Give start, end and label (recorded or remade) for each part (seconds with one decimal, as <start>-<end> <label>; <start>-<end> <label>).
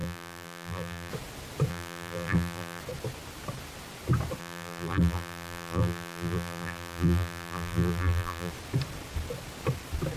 0.0-1.1 remade; 1.1-1.7 recorded; 1.7-2.8 remade; 2.8-4.4 recorded; 4.4-8.5 remade; 8.5-10.2 recorded